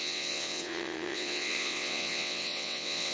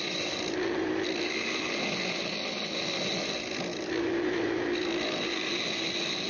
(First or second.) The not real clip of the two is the first